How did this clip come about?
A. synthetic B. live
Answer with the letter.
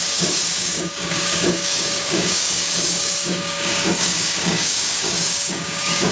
A